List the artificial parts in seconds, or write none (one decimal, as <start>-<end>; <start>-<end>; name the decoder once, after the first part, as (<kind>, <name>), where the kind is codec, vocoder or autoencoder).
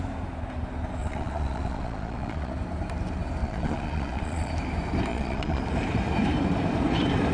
1.0-2.5 (vocoder, Vocos); 3.4-4.5; 5.1-5.6